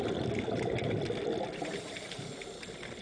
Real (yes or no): yes